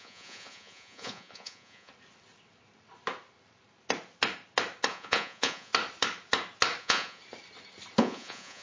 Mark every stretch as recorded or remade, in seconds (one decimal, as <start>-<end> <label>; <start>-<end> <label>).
0.0-1.9 remade; 1.9-4.9 recorded; 4.9-5.7 remade; 5.7-6.8 recorded; 6.8-7.2 remade; 7.2-8.0 recorded; 8.0-8.6 remade